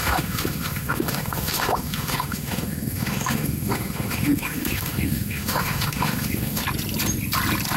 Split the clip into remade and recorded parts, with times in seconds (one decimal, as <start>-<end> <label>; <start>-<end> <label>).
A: 0.0-6.6 remade; 6.6-7.8 recorded

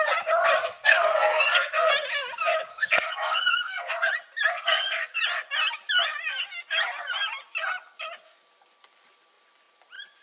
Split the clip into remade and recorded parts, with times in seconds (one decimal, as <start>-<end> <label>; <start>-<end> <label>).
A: 0.0-0.6 recorded; 0.6-1.9 remade; 1.9-2.7 recorded; 2.7-4.1 remade; 4.1-4.5 recorded; 4.5-5.2 remade; 5.2-10.2 recorded